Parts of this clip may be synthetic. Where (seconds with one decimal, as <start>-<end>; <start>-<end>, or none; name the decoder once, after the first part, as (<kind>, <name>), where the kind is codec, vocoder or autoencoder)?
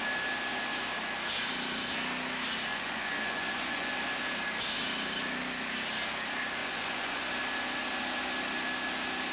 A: 2.7-3.9 (vocoder, Vocos); 6.6-7.2